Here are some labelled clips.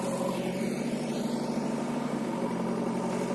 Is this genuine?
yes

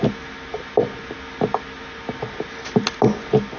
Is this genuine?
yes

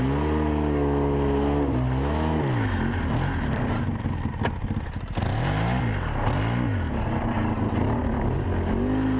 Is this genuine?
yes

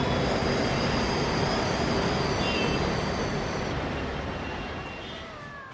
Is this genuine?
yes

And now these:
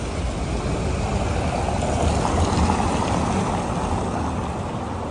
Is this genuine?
yes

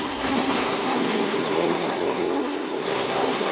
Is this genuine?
no